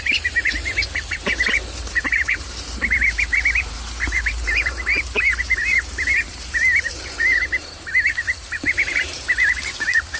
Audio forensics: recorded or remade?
remade